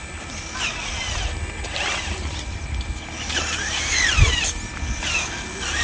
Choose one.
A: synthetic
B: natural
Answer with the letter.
B